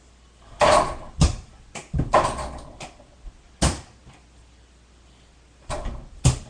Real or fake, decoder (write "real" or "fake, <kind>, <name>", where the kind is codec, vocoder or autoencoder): real